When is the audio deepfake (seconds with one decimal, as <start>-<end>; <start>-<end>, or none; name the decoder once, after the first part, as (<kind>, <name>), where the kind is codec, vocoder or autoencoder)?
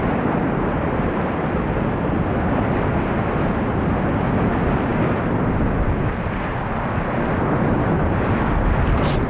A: none